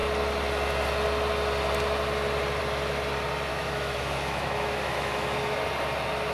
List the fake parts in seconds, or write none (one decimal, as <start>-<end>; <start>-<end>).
3.5-5.6